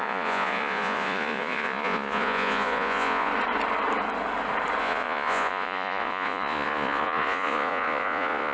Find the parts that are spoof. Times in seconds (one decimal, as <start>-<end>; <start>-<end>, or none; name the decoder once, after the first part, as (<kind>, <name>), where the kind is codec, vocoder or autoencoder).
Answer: 0.0-3.3 (vocoder, Vocos); 4.8-8.5